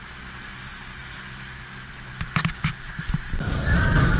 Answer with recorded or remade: recorded